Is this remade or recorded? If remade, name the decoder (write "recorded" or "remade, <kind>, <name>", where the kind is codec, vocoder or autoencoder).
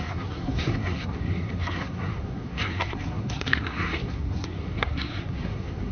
remade, codec, SNAC